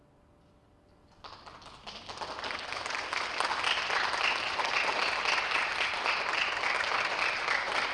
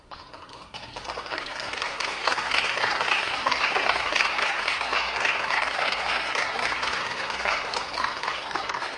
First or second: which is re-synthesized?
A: second